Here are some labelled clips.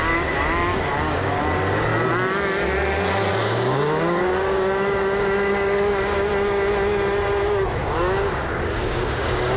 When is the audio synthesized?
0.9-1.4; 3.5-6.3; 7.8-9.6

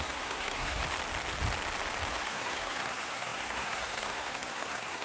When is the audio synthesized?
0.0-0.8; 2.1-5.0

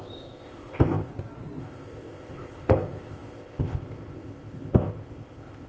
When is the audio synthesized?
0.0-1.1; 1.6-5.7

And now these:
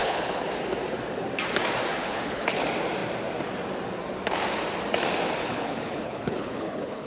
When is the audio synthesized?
0.0-0.5; 2.0-2.6; 5.4-7.1